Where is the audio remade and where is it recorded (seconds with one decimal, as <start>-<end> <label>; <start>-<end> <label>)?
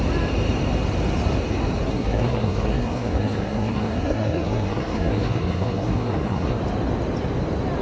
0.0-1.9 recorded; 1.9-6.6 remade; 6.6-7.8 recorded